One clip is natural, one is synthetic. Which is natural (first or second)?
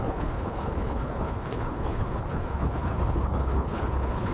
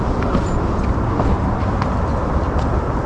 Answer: second